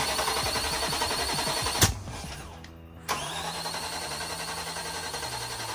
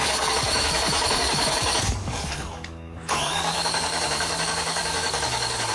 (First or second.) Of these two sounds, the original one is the first